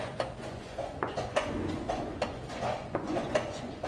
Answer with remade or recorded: remade